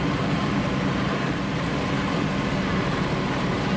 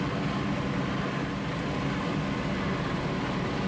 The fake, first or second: first